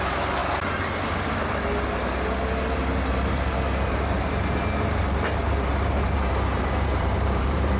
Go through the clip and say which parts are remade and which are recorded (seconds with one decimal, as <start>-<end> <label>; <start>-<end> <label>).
0.0-0.4 remade; 0.4-4.2 recorded; 4.2-7.8 remade